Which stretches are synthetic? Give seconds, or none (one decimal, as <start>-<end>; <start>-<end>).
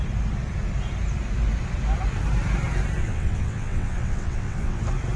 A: 3.0-4.8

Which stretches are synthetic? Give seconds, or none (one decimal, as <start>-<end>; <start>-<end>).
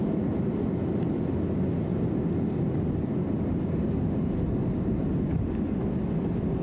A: none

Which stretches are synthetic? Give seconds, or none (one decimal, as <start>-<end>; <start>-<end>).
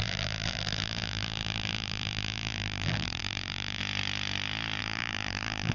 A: 0.0-3.8; 4.8-5.7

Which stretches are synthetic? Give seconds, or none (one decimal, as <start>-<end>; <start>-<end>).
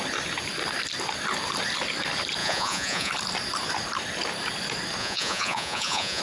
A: 2.4-3.1; 5.0-6.2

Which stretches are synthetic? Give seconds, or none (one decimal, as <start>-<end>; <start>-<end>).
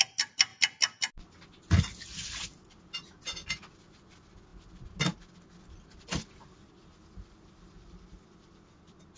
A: none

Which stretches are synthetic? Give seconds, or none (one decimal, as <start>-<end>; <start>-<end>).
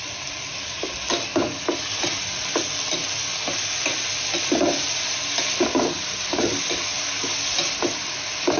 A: none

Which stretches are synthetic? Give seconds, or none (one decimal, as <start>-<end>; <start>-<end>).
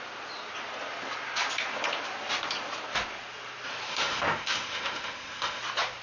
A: 3.9-5.6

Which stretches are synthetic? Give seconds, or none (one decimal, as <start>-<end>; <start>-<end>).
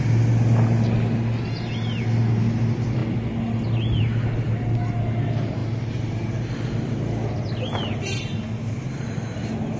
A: none